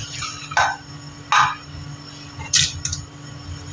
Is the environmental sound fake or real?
real